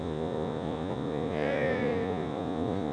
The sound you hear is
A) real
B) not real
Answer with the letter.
B